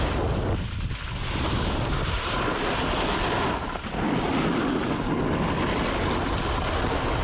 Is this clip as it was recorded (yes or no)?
yes